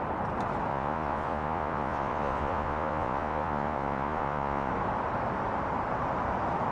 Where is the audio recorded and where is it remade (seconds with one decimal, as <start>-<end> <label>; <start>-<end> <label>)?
0.0-0.7 recorded; 0.7-4.7 remade; 4.7-6.7 recorded